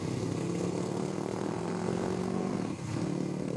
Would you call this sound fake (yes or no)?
yes